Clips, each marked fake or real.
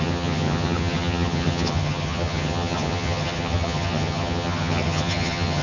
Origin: fake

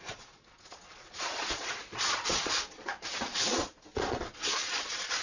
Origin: fake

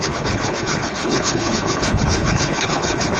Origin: fake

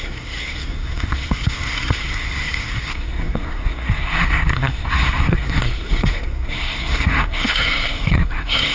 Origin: fake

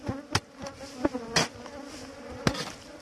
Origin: real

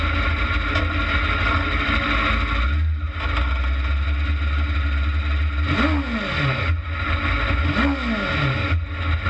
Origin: real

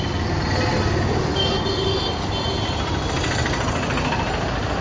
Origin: real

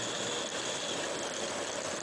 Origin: real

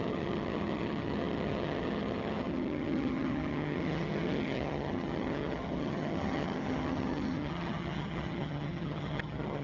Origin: fake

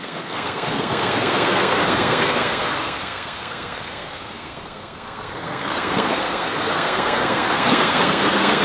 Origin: fake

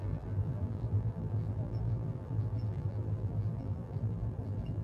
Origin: fake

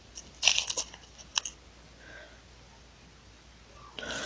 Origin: real